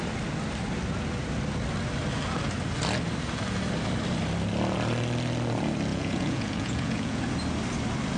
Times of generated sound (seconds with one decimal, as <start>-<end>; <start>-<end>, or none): 5.9-7.2